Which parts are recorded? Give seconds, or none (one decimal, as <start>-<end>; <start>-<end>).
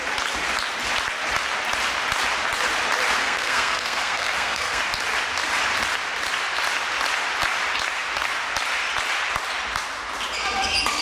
0.0-3.2; 4.8-11.0